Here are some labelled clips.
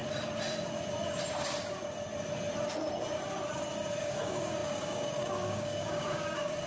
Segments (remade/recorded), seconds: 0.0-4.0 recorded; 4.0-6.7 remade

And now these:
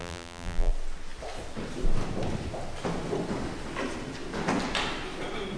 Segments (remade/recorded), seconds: 0.0-0.7 remade; 0.7-5.6 recorded